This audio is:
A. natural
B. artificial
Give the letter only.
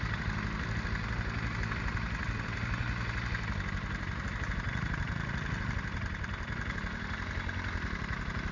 A